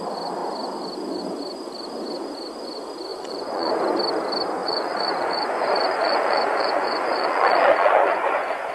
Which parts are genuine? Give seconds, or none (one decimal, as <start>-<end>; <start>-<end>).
0.0-3.1; 3.7-4.6